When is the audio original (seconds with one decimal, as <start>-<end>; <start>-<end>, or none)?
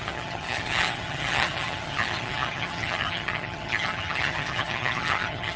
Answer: none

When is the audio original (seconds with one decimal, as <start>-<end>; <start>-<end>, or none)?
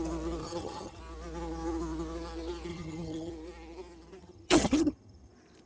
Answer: 0.0-0.4; 1.0-2.7; 3.3-4.2; 5.3-5.7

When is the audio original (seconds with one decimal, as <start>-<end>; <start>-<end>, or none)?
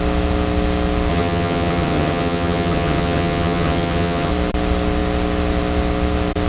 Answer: 0.0-1.1; 4.3-6.5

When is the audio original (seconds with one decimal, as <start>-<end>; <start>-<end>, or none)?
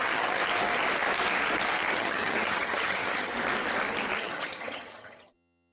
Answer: 0.4-1.9; 3.3-4.2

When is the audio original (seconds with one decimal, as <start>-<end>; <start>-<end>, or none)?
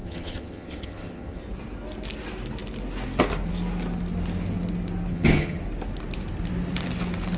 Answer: 1.4-5.1; 5.6-7.4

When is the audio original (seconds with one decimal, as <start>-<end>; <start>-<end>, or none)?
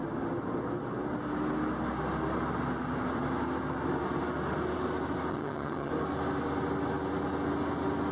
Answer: 0.0-5.3; 5.9-8.1